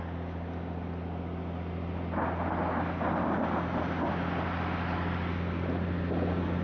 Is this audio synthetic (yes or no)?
no